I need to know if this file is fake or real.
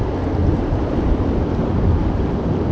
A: real